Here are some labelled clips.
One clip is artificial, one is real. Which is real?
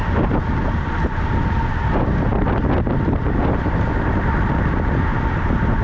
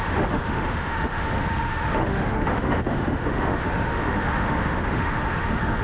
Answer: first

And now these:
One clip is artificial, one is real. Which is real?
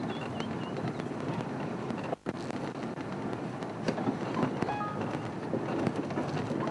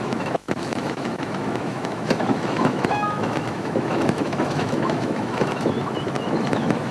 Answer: first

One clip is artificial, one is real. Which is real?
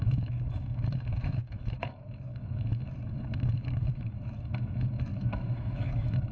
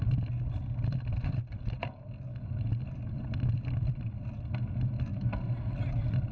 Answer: second